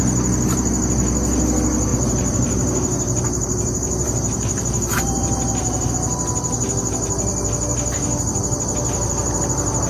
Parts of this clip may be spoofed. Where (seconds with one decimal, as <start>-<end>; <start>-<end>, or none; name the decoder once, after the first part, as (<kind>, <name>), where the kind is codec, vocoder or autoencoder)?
1.9-5.9 (vocoder, BigVGAN v2)